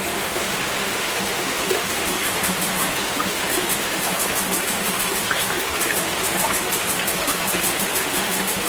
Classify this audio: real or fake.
fake